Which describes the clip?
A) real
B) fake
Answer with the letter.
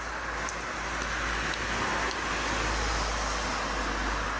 A